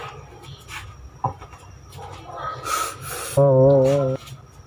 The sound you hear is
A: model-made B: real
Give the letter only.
B